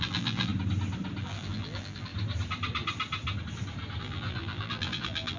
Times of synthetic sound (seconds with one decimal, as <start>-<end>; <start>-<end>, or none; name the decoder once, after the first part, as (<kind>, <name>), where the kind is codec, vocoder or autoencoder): 0.0-0.5 (vocoder, BigVGAN v2); 1.2-2.1; 4.0-5.4